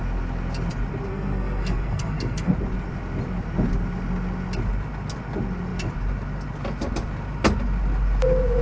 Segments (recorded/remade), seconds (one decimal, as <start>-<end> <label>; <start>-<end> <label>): 0.0-1.1 recorded; 1.1-2.5 remade; 2.5-8.6 recorded